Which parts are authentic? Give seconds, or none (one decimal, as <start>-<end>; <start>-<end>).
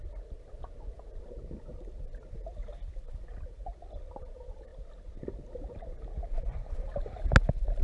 0.0-7.8